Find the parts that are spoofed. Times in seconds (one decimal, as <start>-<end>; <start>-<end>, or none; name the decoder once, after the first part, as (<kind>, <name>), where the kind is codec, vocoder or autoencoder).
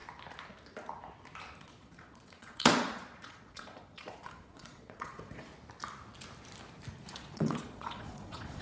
1.6-5.5 (vocoder, Vocos); 7.0-8.6